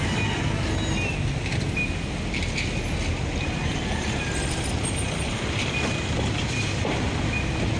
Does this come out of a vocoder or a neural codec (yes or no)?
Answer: no